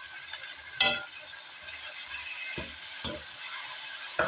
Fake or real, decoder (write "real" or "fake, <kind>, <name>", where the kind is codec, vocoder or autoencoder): real